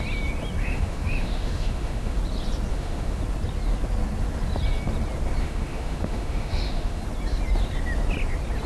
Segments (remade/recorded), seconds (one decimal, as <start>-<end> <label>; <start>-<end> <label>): 0.0-0.6 recorded; 0.6-2.2 remade; 2.2-2.7 recorded; 2.7-3.2 remade; 3.2-5.4 recorded; 5.4-7.0 remade; 7.0-8.7 recorded